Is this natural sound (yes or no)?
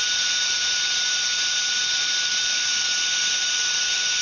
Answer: no